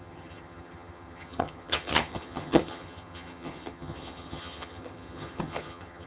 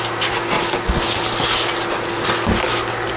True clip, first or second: second